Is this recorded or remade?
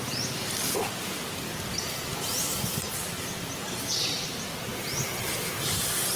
recorded